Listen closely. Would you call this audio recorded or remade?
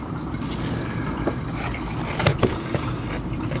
recorded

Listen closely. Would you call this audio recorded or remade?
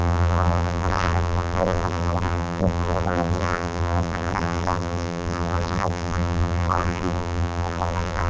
remade